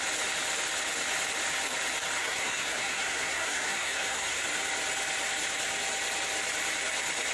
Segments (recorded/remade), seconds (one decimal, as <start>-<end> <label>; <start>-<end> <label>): 0.0-2.2 recorded; 2.2-4.4 remade; 4.4-7.3 recorded